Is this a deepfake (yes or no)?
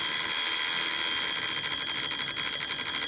no